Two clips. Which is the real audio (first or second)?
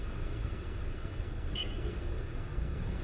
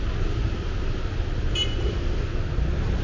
second